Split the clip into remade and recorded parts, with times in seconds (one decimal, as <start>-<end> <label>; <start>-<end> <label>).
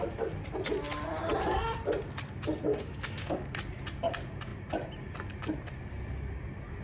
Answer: 0.0-2.7 recorded; 2.7-3.5 remade; 3.5-6.8 recorded